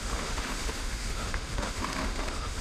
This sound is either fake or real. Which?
fake